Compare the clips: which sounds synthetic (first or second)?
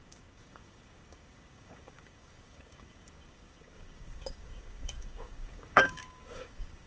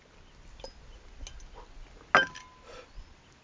first